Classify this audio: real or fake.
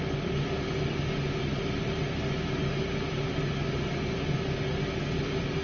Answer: real